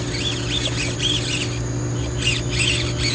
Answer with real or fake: real